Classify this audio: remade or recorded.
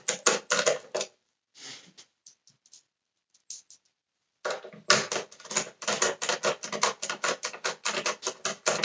recorded